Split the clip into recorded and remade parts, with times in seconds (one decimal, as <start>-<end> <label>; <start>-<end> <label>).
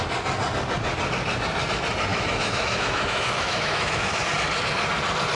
0.0-2.1 recorded; 2.1-4.2 remade; 4.2-5.3 recorded